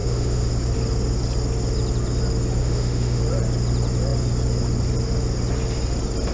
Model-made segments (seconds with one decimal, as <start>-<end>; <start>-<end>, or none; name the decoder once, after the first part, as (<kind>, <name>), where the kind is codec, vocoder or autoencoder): 0.0-0.5 (autoencoder, DAC-VAE); 2.6-3.2